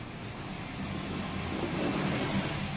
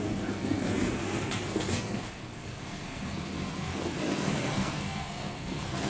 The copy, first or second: second